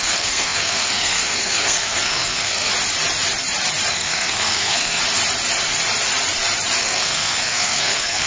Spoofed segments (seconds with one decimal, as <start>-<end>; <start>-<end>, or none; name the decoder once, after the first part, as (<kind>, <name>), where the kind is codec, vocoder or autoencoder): 0.0-2.7 (codec, SNAC); 3.9-5.0; 6.8-8.3